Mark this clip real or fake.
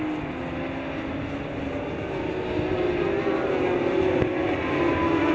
real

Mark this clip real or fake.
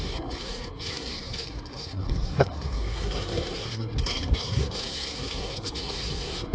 fake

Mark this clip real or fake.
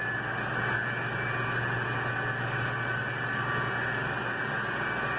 real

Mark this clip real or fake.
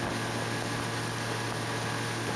real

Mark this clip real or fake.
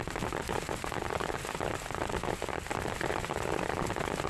real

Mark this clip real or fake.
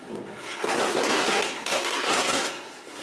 fake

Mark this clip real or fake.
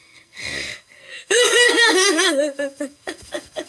fake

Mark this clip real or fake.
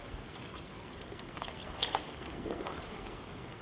fake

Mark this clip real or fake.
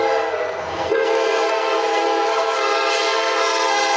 fake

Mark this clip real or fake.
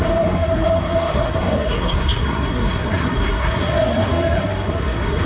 fake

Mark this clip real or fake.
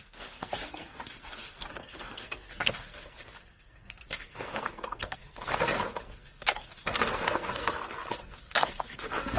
fake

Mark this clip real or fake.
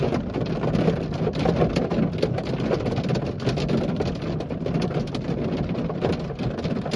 real